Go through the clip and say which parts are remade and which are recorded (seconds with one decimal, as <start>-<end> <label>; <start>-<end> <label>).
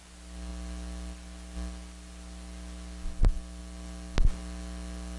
0.0-5.2 recorded